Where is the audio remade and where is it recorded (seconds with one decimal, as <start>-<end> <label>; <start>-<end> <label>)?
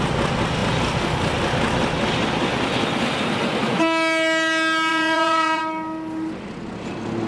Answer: 0.0-4.9 recorded; 4.9-5.6 remade; 5.6-7.3 recorded